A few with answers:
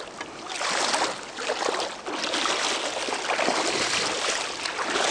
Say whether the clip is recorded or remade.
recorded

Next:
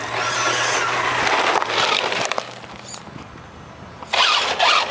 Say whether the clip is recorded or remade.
recorded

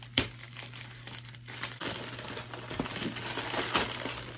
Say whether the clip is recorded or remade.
recorded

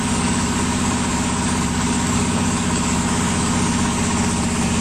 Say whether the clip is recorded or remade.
remade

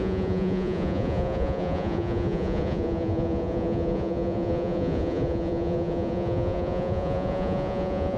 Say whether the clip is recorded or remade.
remade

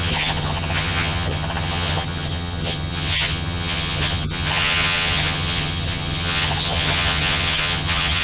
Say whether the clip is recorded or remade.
remade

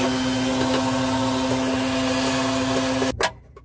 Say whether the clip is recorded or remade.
recorded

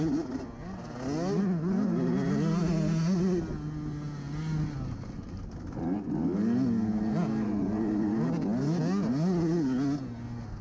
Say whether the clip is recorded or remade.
recorded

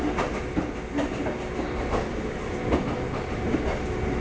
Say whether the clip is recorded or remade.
recorded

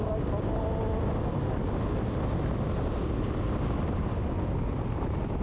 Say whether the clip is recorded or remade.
recorded